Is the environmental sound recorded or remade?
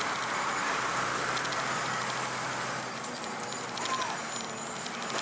remade